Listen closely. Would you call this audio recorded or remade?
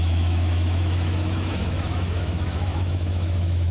remade